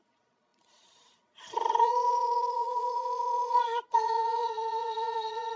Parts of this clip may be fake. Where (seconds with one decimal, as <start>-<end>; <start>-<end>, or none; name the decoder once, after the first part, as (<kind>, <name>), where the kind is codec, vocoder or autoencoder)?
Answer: 0.0-5.6 (vocoder, Vocos)